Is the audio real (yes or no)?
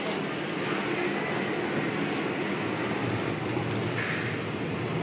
yes